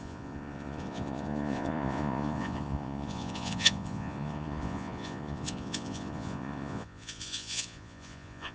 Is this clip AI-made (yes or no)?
yes